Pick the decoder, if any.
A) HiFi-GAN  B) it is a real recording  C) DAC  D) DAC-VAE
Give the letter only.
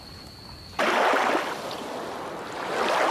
B